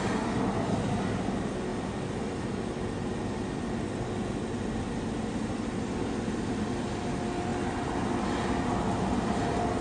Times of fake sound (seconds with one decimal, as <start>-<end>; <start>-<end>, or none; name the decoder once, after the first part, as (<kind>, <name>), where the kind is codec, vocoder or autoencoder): none